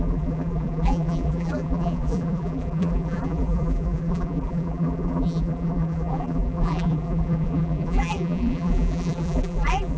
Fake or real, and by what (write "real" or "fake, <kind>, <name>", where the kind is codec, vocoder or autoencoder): fake, vocoder, BigVGAN v2